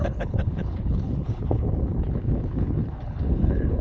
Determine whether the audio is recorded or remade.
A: remade